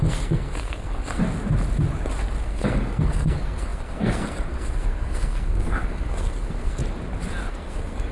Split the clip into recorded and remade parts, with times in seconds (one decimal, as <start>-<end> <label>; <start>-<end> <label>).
0.0-1.2 remade; 1.2-2.4 recorded; 2.4-6.8 remade; 6.8-7.5 recorded; 7.5-8.1 remade

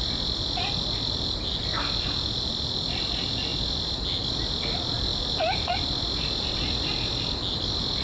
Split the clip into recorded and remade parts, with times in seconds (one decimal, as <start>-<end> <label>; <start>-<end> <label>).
0.0-8.0 recorded

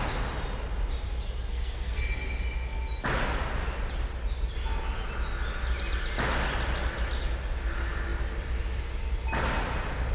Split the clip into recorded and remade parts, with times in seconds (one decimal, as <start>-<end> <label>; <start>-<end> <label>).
0.0-1.5 recorded; 1.5-2.0 remade; 2.0-10.1 recorded

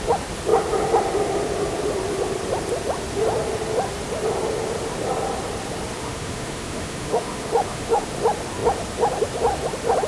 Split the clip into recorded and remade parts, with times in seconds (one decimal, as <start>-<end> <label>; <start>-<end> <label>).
0.0-6.0 recorded; 6.0-8.1 remade; 8.1-10.1 recorded

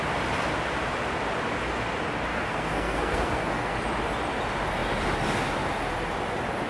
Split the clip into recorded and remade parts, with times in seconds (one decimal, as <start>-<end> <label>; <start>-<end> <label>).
0.0-2.3 recorded; 2.3-3.8 remade; 3.8-6.7 recorded

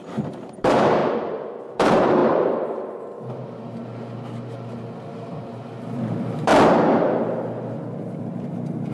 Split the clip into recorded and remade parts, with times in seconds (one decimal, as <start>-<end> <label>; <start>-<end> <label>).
0.0-1.0 remade; 1.0-1.6 recorded; 1.6-2.2 remade; 2.2-6.1 recorded; 6.1-6.5 remade; 6.5-8.2 recorded; 8.2-8.9 remade

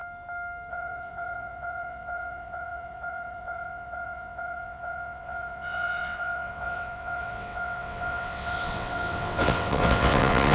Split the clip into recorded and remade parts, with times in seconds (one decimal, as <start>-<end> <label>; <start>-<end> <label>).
0.0-0.7 recorded; 0.7-10.5 remade

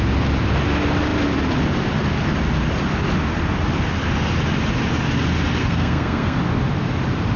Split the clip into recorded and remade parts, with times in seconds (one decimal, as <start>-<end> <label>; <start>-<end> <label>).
0.0-5.6 recorded; 5.6-6.4 remade; 6.4-7.4 recorded